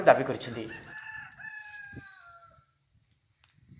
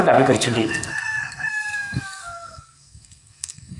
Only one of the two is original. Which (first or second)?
first